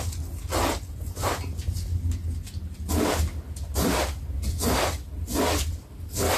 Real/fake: real